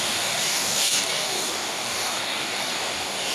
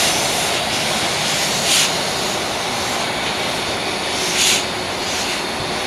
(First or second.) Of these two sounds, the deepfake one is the first